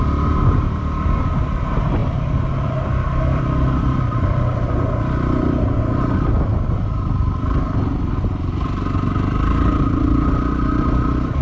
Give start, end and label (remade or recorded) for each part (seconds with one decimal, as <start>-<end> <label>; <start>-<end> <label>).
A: 0.0-2.0 recorded; 2.0-6.3 remade; 6.3-11.4 recorded